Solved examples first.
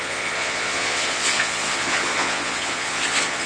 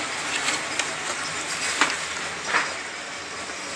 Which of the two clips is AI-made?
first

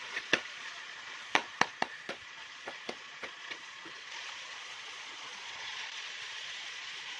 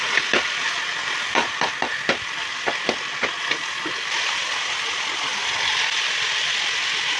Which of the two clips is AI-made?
first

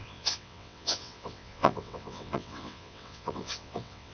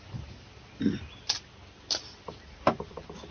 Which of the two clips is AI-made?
first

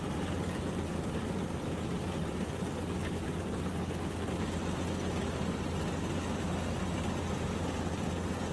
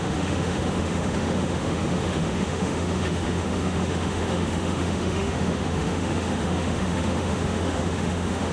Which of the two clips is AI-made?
second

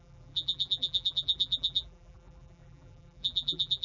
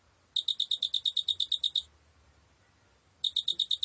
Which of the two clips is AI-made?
first